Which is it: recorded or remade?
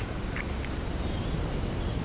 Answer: recorded